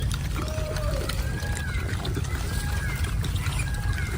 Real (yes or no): no